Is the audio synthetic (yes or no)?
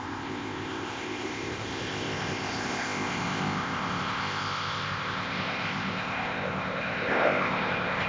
yes